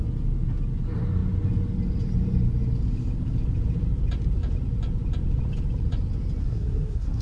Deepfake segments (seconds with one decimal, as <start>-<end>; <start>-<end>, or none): 6.4-7.2